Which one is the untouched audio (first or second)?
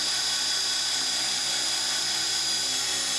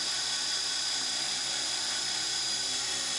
first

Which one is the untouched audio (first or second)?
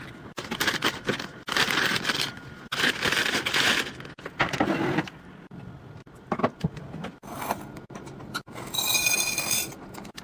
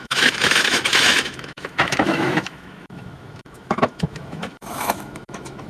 first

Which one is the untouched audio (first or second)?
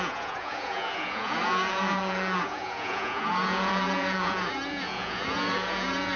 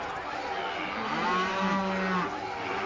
second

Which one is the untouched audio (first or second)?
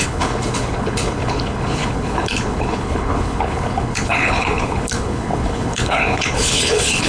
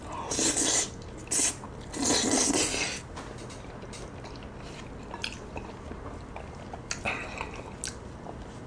second